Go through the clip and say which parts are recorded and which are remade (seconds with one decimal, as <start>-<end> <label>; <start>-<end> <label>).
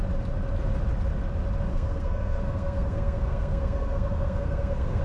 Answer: 0.0-1.7 recorded; 1.7-5.0 remade